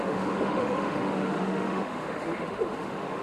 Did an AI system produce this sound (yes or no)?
yes